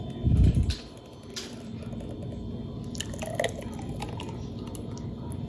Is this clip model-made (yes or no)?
no